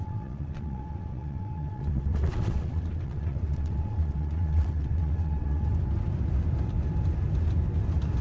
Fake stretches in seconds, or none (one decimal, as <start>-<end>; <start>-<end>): 0.0-5.7